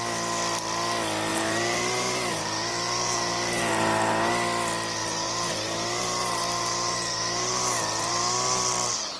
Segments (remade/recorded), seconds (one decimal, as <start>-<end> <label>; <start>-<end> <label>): 0.0-1.3 recorded; 1.3-4.3 remade; 4.3-5.0 recorded; 5.0-8.1 remade; 8.1-9.2 recorded